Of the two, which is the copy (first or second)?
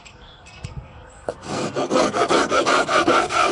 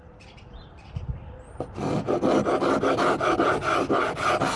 first